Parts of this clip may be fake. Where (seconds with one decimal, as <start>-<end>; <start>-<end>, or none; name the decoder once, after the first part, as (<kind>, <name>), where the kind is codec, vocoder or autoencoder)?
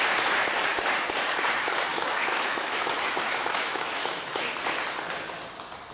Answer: 1.9-4.5 (autoencoder, DAC-VAE)